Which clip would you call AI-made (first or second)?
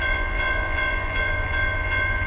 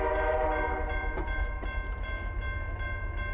first